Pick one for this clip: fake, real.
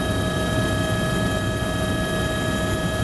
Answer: real